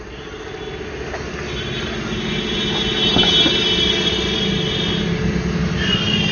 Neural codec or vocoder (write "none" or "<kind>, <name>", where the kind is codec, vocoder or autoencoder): none